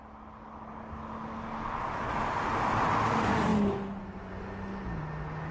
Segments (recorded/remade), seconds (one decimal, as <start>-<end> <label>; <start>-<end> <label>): 0.0-5.5 recorded